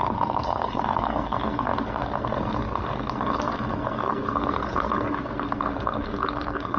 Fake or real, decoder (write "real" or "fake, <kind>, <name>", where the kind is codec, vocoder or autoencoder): fake, codec, SNAC